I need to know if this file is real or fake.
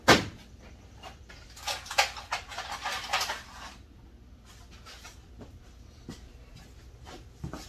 real